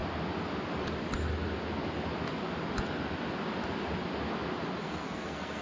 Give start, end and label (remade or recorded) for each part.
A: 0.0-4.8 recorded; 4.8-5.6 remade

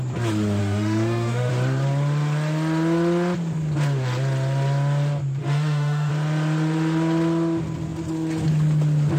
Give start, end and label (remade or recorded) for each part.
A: 0.0-0.6 recorded; 0.6-1.5 remade; 1.5-5.4 recorded; 5.4-6.1 remade; 6.1-9.2 recorded

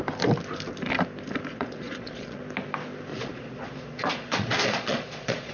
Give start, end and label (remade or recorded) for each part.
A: 0.0-1.5 recorded; 1.5-2.4 remade; 2.4-3.1 recorded; 3.1-5.5 remade

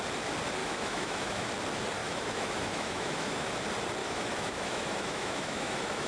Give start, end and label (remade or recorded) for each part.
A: 0.0-0.6 recorded; 0.6-1.5 remade; 1.5-2.0 recorded; 2.0-3.5 remade; 3.5-4.0 recorded; 4.0-6.1 remade

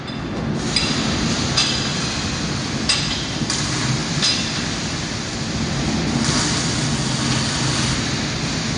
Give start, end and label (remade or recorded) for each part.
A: 0.0-8.8 recorded

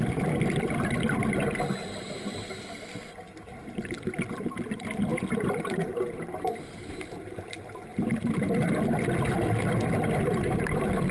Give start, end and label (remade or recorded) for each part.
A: 0.0-1.8 recorded; 1.8-2.5 remade; 2.5-5.1 recorded; 5.1-7.4 remade; 7.4-11.1 recorded

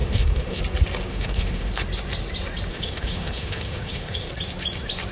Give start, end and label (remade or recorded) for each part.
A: 0.0-0.6 remade; 0.6-1.1 recorded; 1.1-1.7 remade; 1.7-2.7 recorded; 2.7-4.3 remade; 4.3-5.1 recorded